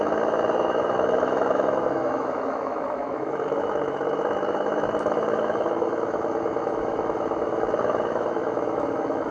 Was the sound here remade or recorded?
remade